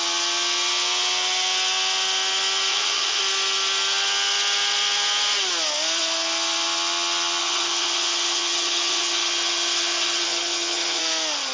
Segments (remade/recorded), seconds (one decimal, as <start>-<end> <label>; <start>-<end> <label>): 0.0-2.7 recorded; 2.7-3.2 remade; 3.2-7.4 recorded; 7.4-11.0 remade; 11.0-11.5 recorded